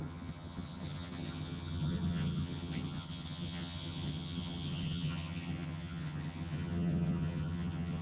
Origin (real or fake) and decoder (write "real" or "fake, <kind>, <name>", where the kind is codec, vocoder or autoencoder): fake, vocoder, HiFi-GAN